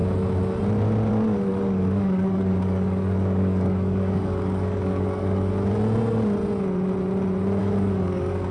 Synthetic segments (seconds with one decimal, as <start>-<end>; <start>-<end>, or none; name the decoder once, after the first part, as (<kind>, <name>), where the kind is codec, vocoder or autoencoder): 1.1-5.5 (codec, DAC); 7.6-8.5